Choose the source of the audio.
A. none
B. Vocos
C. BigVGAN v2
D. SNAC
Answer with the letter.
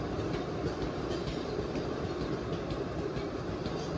A